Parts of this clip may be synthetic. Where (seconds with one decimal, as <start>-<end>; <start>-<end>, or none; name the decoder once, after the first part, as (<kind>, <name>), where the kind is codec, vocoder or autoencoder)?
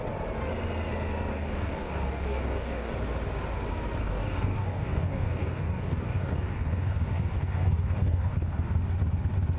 1.3-2.9 (codec, DAC); 4.0-8.8